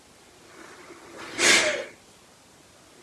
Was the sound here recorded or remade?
recorded